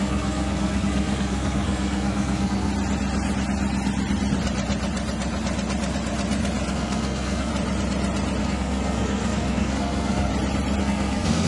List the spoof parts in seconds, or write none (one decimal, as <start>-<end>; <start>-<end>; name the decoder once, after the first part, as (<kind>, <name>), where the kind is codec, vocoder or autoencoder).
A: 0.0-2.7 (codec, SNAC); 6.7-7.5; 8.4-10.3; 10.8-11.5